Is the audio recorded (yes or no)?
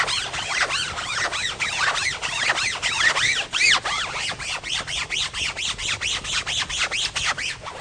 yes